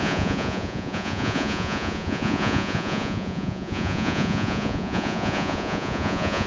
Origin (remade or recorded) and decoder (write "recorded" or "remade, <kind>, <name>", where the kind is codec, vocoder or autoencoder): remade, vocoder, Vocos